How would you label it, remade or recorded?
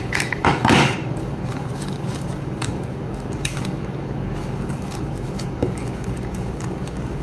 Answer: remade